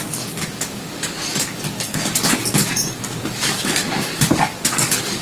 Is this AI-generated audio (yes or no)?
yes